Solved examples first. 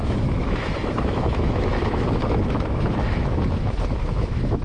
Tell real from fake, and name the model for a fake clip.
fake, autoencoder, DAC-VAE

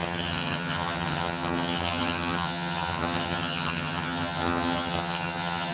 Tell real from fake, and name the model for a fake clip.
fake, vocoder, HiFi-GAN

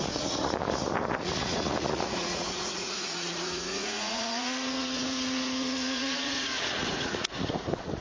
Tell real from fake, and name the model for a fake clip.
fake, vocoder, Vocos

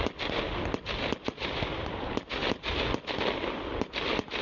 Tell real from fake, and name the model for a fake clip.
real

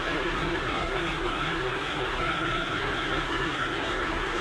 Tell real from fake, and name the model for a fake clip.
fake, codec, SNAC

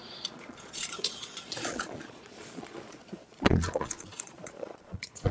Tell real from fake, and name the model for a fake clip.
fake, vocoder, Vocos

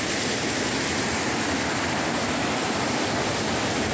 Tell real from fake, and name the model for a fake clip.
real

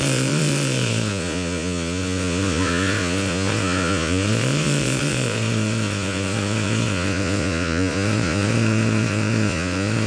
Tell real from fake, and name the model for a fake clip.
fake, vocoder, Vocos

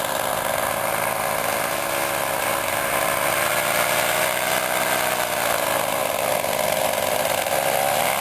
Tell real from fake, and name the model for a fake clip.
real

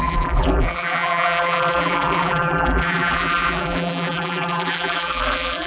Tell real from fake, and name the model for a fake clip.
fake, vocoder, BigVGAN v2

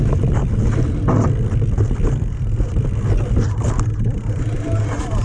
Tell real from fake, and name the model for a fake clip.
fake, vocoder, BigVGAN v2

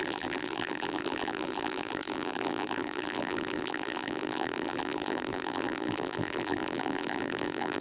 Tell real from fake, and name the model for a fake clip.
fake, vocoder, BigVGAN v2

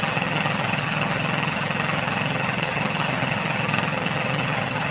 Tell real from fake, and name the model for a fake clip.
fake, vocoder, HiFi-GAN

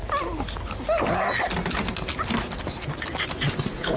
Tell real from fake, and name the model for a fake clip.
real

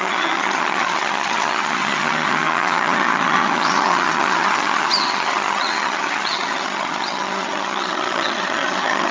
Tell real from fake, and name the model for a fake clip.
fake, vocoder, HiFi-GAN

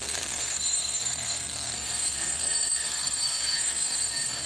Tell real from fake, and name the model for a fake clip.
fake, codec, SNAC